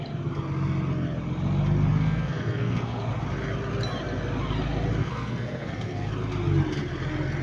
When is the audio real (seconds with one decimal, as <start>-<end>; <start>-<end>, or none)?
0.0-1.9; 3.0-5.0; 6.1-7.4